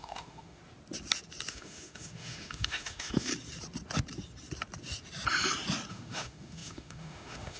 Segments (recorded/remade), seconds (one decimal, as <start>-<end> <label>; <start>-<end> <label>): 0.0-0.6 remade; 0.6-1.5 recorded; 1.5-3.3 remade; 3.3-5.9 recorded; 5.9-7.6 remade